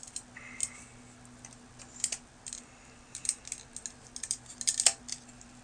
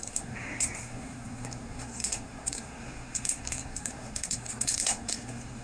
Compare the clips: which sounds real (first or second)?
first